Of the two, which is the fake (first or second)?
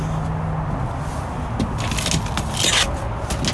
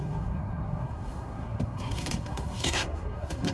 second